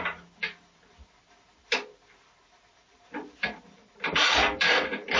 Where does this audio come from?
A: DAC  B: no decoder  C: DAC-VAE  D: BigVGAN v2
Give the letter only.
D